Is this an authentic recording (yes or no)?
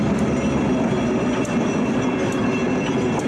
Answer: yes